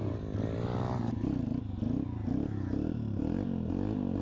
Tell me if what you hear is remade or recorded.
recorded